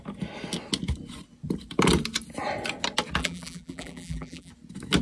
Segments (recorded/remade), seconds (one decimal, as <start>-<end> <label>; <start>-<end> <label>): 0.0-3.2 recorded; 3.2-4.5 remade; 4.5-5.0 recorded